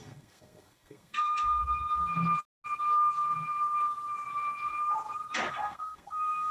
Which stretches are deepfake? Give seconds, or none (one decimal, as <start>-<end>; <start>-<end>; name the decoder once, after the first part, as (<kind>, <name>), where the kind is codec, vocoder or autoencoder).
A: 0.0-1.6 (codec, SNAC); 5.5-6.5